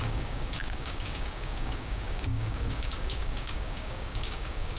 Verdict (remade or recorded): remade